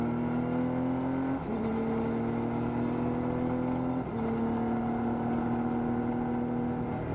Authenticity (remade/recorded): recorded